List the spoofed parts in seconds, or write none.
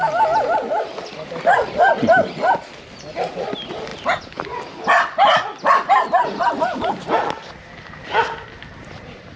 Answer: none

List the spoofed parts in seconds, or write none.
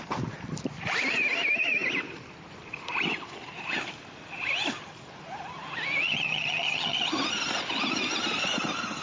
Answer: 6.1-7.0 (vocoder, HiFi-GAN)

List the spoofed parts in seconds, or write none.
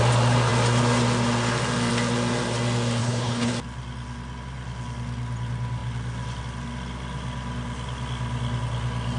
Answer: 3.0-3.5 (codec, HILCodec)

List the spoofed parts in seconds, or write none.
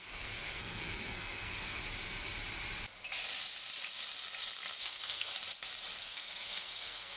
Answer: 0.0-1.8 (codec, SNAC); 4.8-5.3; 6.0-7.2